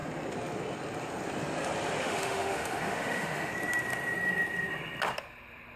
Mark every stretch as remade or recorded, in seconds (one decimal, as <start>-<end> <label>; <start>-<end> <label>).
0.0-2.0 recorded; 2.0-3.5 remade; 3.5-5.8 recorded